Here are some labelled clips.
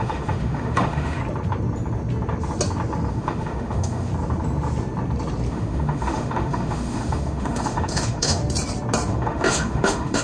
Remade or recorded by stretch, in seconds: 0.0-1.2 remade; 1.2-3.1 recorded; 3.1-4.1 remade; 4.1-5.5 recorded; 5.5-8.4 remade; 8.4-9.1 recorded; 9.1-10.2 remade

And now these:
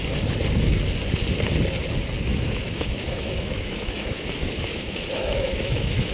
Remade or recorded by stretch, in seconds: 0.0-2.3 recorded; 2.3-6.1 remade

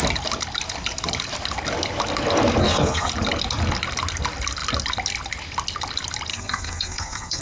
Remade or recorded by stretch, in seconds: 0.0-2.6 recorded; 2.6-3.1 remade; 3.1-6.3 recorded; 6.3-7.4 remade

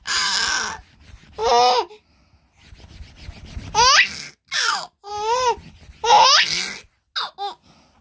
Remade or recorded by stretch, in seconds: 0.0-8.0 recorded